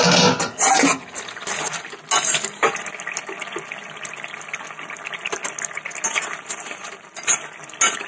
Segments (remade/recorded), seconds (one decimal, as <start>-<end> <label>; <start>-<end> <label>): 0.0-8.1 recorded